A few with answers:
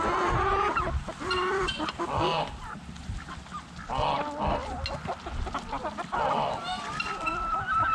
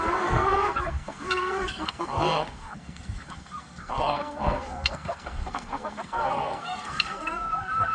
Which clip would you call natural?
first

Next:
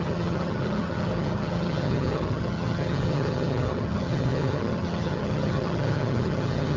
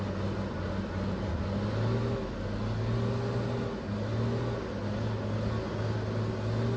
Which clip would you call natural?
second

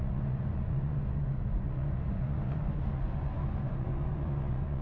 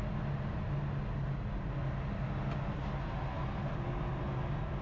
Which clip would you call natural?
second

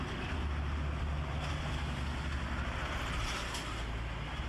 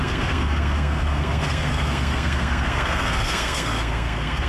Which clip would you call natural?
first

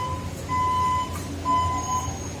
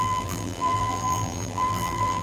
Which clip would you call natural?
first